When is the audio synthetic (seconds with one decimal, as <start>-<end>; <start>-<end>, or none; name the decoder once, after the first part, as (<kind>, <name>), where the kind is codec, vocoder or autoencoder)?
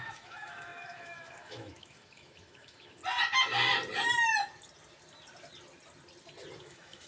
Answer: 0.0-3.0 (autoencoder, DAC-VAE); 6.6-7.1